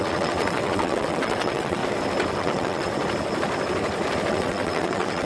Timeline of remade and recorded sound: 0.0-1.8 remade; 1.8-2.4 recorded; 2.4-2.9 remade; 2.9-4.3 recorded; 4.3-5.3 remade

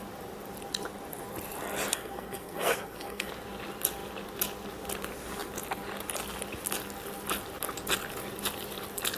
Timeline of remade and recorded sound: 0.0-1.9 recorded; 1.9-3.3 remade; 3.3-9.2 recorded

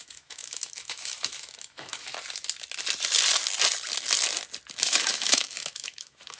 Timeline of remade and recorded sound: 0.0-2.1 remade; 2.1-4.7 recorded; 4.7-6.4 remade

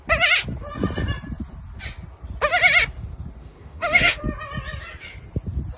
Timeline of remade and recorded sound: 0.0-3.4 recorded; 3.4-4.2 remade; 4.2-5.8 recorded